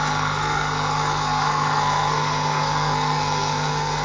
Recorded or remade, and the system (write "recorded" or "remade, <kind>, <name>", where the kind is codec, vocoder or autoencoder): remade, codec, SNAC